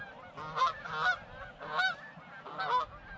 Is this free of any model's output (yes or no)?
yes